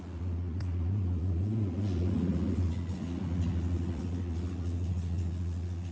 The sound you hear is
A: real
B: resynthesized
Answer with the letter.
B